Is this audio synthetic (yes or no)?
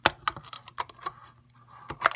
no